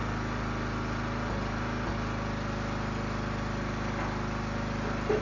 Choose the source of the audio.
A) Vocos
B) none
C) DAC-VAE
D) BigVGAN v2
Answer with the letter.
B